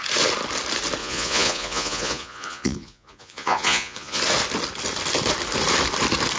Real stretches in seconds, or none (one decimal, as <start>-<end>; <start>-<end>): 0.0-1.0; 4.2-6.4